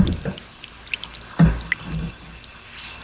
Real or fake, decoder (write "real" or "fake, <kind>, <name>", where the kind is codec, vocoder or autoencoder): real